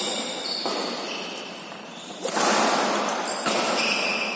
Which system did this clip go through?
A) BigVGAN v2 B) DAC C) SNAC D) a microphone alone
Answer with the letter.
D